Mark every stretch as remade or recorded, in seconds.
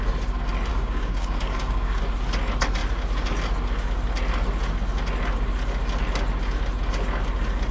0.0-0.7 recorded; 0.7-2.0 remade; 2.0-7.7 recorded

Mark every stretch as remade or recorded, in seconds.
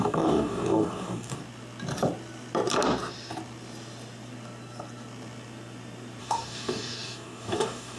0.0-1.4 remade; 1.4-6.2 recorded; 6.2-8.0 remade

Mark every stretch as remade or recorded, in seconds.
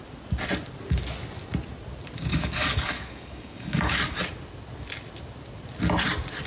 0.0-2.3 recorded; 2.3-4.2 remade; 4.2-6.5 recorded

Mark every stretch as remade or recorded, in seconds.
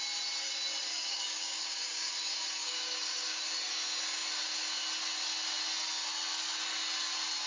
0.0-0.9 recorded; 0.9-2.1 remade; 2.1-2.6 recorded; 2.6-3.4 remade; 3.4-7.5 recorded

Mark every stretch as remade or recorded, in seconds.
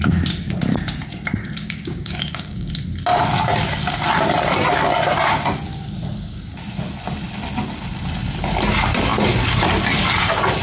0.0-1.6 recorded; 1.6-2.7 remade; 2.7-10.6 recorded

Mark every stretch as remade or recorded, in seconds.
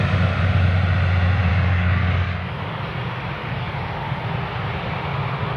0.0-1.5 recorded; 1.5-2.9 remade; 2.9-3.4 recorded; 3.4-4.2 remade; 4.2-5.6 recorded